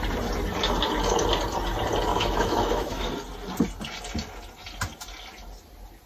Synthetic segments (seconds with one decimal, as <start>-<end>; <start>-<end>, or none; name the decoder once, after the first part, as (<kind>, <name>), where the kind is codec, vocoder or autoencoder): 2.1-3.1 (autoencoder, DAC-VAE)